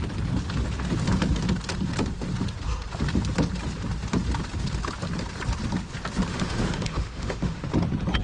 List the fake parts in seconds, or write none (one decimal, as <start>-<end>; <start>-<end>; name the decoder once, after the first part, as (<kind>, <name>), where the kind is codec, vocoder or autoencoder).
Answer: 6.3-7.7 (autoencoder, DAC-VAE)

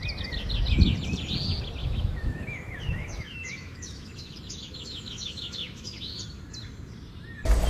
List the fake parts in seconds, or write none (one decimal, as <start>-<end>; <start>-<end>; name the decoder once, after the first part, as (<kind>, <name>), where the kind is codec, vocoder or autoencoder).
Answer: 1.8-6.2 (autoencoder, DAC-VAE)